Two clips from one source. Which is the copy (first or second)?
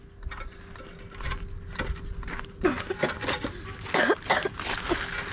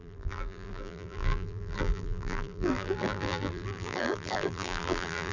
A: second